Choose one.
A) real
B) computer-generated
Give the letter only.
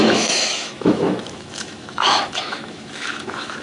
B